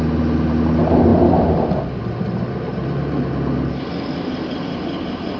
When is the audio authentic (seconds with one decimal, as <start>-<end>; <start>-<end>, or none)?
0.0-2.7; 3.3-5.4

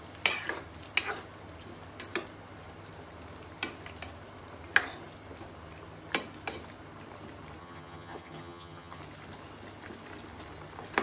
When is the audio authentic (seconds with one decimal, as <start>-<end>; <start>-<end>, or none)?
0.0-7.6; 9.0-11.0

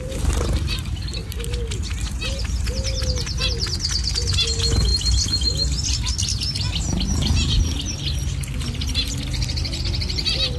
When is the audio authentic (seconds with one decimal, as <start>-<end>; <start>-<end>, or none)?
0.0-10.6

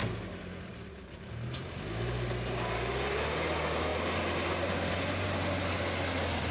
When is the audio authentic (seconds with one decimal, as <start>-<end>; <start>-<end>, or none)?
0.0-0.7; 1.3-6.5

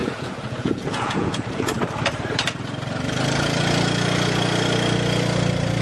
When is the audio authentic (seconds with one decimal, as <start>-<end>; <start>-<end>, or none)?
1.7-5.8